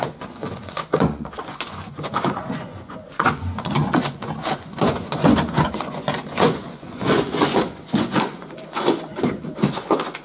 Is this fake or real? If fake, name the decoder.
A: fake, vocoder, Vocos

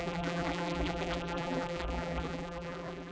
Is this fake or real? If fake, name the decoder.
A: fake, vocoder, BigVGAN v2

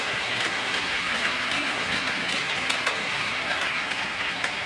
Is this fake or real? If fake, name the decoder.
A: fake, codec, SNAC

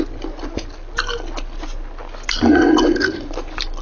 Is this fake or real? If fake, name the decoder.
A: real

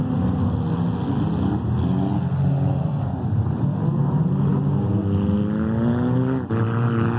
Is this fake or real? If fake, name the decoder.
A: real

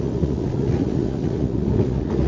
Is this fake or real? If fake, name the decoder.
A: fake, vocoder, Vocos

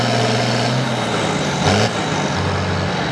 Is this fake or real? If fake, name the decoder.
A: real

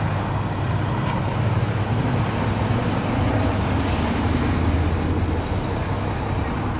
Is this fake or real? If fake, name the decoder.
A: real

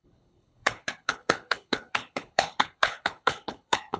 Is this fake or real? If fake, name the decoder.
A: fake, codec, HILCodec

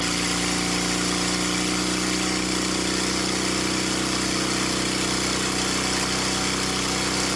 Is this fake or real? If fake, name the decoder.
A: real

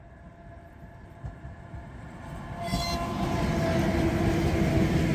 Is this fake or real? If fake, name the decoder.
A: real